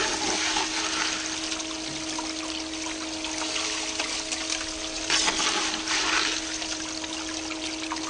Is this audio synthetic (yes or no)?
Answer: no